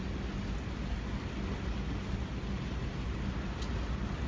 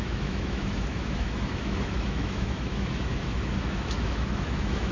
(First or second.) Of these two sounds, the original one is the first